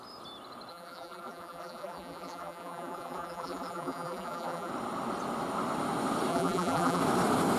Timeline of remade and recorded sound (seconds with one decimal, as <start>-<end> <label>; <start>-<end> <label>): 0.0-0.7 recorded; 0.7-4.7 remade; 4.7-6.3 recorded; 6.3-7.0 remade; 7.0-7.6 recorded